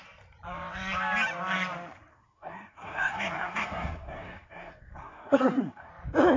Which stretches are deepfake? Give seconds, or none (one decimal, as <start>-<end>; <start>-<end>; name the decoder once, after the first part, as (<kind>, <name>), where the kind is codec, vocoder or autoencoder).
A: 2.1-5.9 (codec, SNAC)